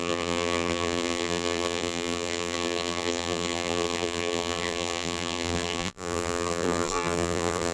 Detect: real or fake fake